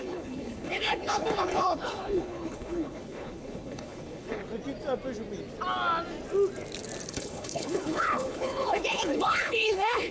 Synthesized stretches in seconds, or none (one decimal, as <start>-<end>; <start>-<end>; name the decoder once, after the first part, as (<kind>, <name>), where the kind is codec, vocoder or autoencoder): 0.0-4.4 (codec, HILCodec); 7.1-10.1